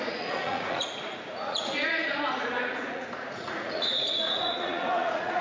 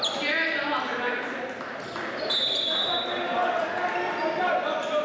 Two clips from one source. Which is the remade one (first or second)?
first